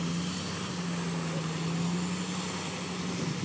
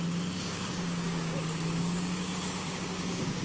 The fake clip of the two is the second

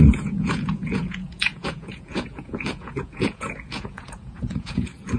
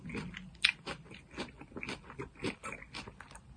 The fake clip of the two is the first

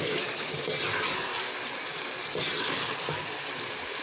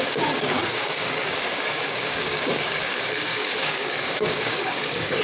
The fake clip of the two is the second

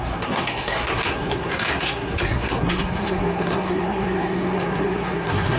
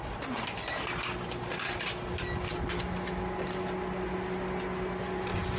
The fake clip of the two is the first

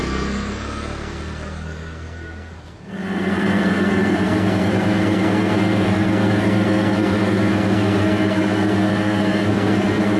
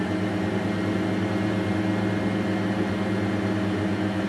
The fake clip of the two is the first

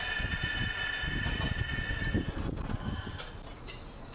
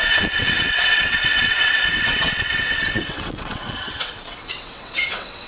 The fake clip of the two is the second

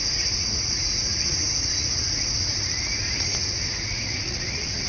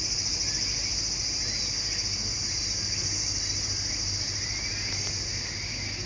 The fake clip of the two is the first